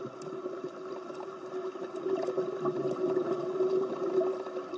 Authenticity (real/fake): real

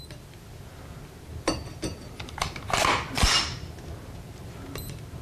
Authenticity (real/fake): real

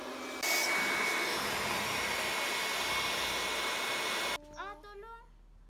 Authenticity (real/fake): real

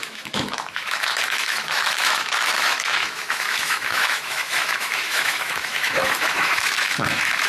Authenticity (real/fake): fake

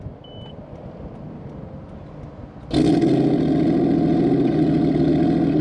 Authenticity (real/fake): real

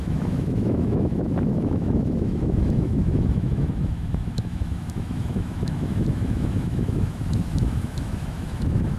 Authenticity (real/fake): fake